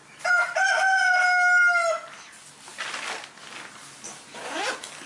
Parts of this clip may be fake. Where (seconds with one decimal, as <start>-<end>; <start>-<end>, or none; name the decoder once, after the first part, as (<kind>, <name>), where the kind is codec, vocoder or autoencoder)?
none